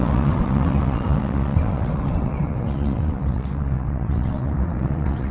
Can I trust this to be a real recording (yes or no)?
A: no